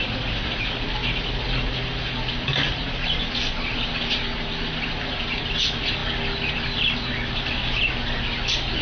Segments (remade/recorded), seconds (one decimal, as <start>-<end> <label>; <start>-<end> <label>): 0.0-8.8 recorded